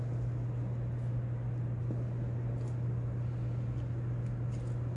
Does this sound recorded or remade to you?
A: recorded